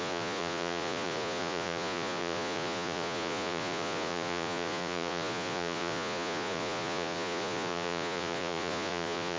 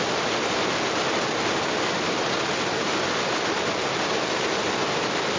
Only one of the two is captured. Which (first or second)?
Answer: second